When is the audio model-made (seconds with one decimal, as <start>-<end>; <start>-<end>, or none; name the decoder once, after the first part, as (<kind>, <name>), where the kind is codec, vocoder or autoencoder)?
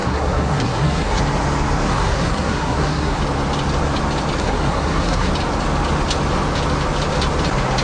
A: 0.0-1.2 (codec, SNAC); 1.9-3.2; 4.4-5.3